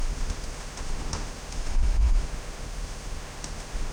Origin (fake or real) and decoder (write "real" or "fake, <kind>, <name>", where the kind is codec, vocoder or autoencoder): fake, autoencoder, DAC-VAE